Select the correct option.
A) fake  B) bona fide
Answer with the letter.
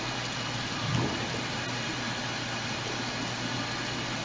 B